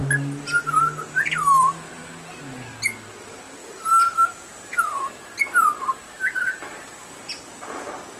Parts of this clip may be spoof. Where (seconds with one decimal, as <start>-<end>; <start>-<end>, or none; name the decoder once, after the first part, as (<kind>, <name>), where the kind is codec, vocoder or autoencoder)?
3.6-7.2 (vocoder, BigVGAN v2)